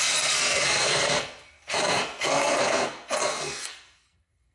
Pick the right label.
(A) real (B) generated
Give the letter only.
B